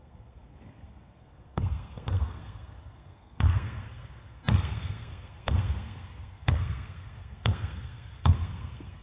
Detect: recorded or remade remade